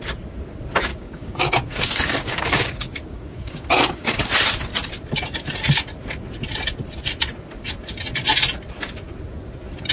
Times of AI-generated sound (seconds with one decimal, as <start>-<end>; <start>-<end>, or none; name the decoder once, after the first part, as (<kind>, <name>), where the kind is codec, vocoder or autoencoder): 0.9-4.3 (codec, DAC)